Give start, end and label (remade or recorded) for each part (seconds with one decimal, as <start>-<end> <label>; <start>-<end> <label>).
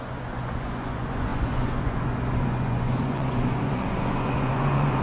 0.0-5.0 remade